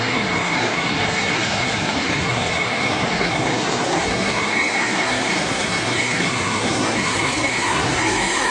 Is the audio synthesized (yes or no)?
yes